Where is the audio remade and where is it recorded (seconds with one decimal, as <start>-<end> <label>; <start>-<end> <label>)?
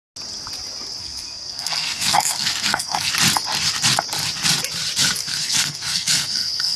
0.0-1.0 recorded; 1.0-3.1 remade; 3.1-5.2 recorded; 5.2-6.8 remade